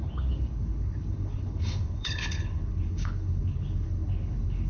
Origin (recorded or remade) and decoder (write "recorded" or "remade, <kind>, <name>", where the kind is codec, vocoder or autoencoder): remade, codec, HILCodec